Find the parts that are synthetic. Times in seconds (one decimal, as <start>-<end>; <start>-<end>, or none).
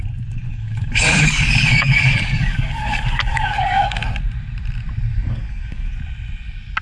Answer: 0.5-4.0; 5.1-5.9